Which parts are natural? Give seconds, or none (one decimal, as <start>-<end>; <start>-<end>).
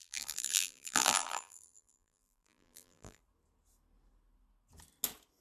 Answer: 3.2-5.4